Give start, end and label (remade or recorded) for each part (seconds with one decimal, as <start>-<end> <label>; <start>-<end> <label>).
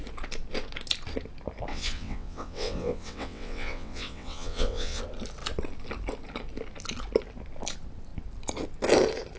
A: 0.0-1.7 recorded; 1.7-5.0 remade; 5.0-9.4 recorded